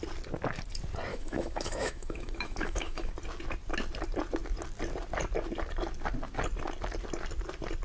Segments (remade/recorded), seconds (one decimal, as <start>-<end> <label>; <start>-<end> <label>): 0.0-1.1 recorded; 1.1-3.1 remade; 3.1-7.8 recorded